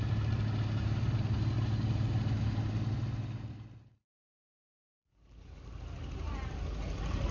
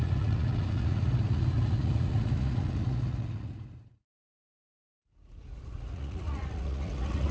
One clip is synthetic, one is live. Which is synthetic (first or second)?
second